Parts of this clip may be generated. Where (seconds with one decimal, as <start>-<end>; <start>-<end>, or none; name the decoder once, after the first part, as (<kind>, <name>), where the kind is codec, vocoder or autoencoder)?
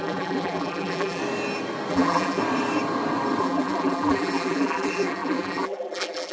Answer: 0.0-1.2 (vocoder, BigVGAN v2); 1.9-2.4; 3.4-6.3